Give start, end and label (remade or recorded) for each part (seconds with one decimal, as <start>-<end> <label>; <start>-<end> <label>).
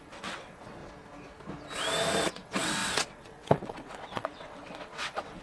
0.0-0.8 remade; 0.8-2.2 recorded; 2.2-5.4 remade